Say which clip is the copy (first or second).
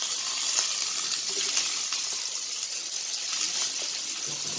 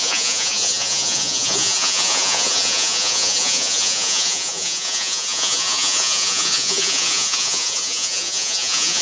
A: second